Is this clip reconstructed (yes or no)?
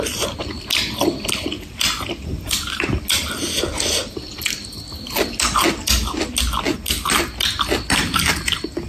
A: no